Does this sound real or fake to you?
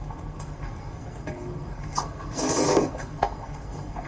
fake